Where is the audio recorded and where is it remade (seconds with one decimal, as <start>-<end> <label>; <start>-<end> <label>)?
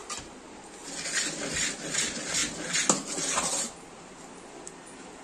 0.0-0.9 remade; 0.9-5.2 recorded